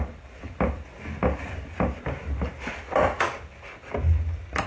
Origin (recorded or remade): recorded